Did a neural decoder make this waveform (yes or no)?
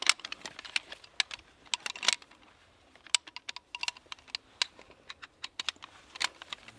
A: no